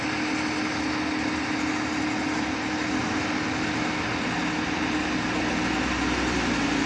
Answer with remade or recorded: recorded